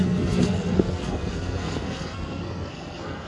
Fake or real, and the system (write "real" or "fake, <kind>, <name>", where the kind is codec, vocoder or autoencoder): fake, codec, SNAC